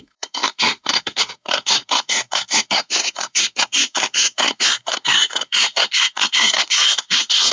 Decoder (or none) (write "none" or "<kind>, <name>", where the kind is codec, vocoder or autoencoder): codec, SNAC